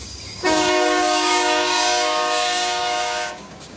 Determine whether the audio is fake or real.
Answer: fake